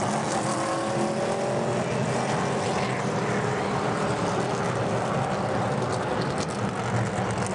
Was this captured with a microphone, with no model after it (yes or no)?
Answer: yes